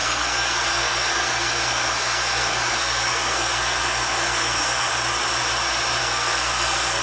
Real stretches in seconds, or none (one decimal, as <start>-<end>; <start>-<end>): 4.9-6.0